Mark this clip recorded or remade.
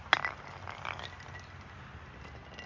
recorded